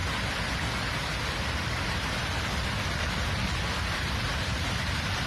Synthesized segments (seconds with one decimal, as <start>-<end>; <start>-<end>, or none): none